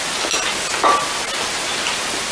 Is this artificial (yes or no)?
no